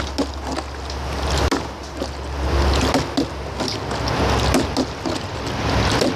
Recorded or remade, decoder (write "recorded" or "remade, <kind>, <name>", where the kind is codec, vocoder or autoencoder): recorded